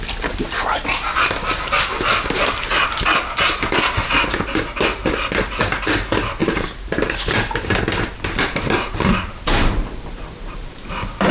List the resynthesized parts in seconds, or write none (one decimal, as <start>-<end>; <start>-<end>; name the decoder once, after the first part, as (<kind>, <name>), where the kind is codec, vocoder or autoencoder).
6.4-10.9 (vocoder, BigVGAN v2)

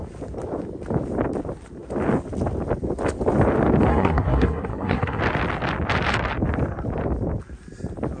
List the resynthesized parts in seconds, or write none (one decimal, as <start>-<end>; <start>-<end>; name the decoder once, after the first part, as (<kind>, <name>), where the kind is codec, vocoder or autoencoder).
3.9-5.2 (codec, SNAC)